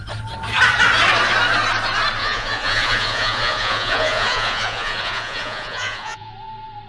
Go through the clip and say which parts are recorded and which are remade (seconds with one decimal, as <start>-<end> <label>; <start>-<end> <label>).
0.0-2.2 recorded; 2.2-6.3 remade; 6.3-6.9 recorded